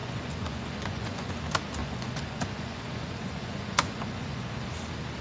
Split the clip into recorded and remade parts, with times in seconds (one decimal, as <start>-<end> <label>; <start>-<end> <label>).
0.0-1.3 remade; 1.3-1.8 recorded; 1.8-4.5 remade; 4.5-5.2 recorded